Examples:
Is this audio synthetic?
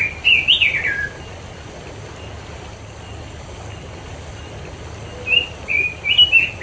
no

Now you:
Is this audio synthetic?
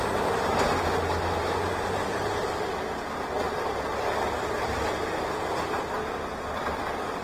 no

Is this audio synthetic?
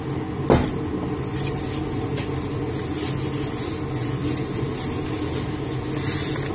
no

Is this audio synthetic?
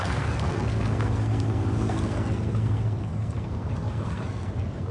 yes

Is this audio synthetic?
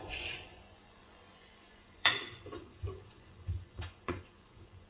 yes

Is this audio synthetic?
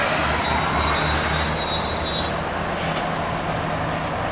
no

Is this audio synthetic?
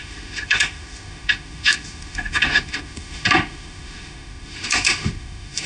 yes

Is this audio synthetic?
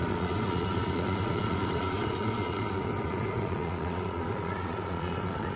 yes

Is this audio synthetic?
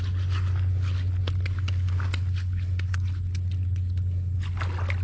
no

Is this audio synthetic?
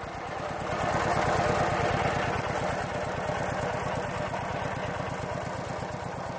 no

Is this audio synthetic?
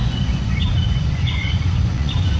yes